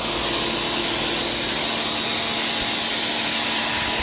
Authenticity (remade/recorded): recorded